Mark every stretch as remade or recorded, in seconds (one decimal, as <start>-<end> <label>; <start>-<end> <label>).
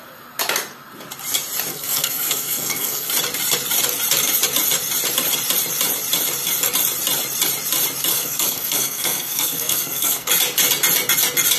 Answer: 0.0-1.7 recorded; 1.7-3.1 remade; 3.1-8.1 recorded; 8.1-10.3 remade; 10.3-11.6 recorded